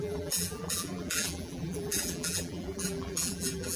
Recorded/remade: remade